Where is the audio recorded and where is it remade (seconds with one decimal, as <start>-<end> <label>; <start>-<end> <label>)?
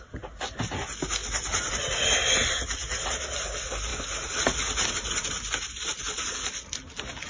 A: 0.0-7.3 recorded